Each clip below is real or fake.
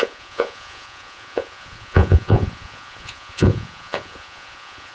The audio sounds fake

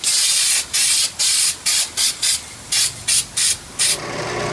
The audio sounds real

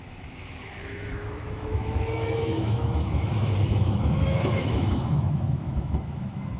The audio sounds fake